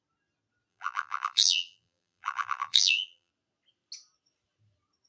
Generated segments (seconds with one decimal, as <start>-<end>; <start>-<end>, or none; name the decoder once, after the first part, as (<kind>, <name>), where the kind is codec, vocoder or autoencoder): 0.7-3.3 (vocoder, BigVGAN v2)